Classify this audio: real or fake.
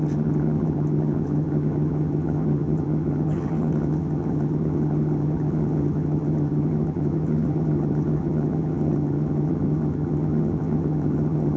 fake